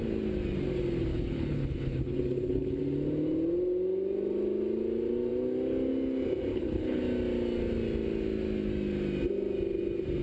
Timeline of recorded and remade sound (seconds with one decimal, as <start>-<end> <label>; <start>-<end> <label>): 0.0-1.1 recorded; 1.1-2.8 remade; 2.8-6.5 recorded; 6.5-7.0 remade; 7.0-10.2 recorded